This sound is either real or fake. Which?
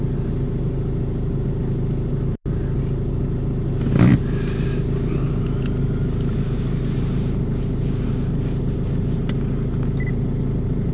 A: real